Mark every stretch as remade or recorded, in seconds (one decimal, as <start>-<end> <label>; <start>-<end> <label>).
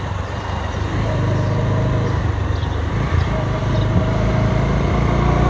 0.0-2.6 recorded; 2.6-3.1 remade; 3.1-5.5 recorded